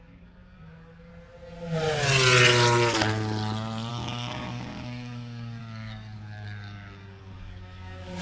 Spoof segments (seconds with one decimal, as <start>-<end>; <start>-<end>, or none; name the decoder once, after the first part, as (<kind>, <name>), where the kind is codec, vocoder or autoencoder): 0.0-1.1 (codec, DAC); 3.9-8.2